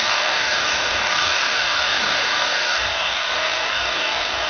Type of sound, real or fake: fake